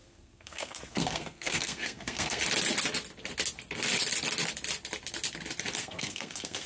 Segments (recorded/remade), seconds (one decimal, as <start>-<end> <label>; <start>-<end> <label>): 0.0-2.4 remade; 2.4-5.8 recorded; 5.8-6.7 remade